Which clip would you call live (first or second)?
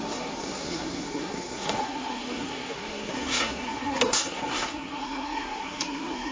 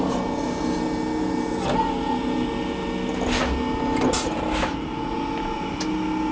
second